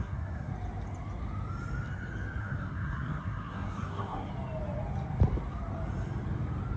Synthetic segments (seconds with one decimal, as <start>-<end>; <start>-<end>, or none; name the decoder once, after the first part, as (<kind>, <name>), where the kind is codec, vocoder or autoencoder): 0.0-0.5 (codec, SNAC); 2.4-4.3